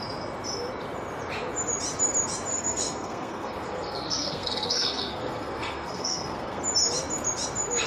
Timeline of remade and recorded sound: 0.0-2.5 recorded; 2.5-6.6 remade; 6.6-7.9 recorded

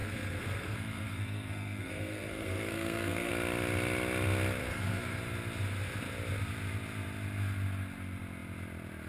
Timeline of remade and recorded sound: 0.0-3.3 remade; 3.3-4.6 recorded; 4.6-5.2 remade; 5.2-9.1 recorded